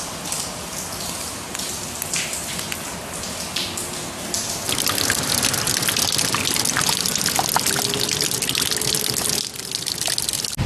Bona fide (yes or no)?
yes